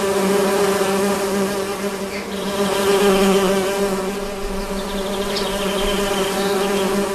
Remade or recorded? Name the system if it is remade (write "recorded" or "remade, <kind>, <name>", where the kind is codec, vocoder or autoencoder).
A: recorded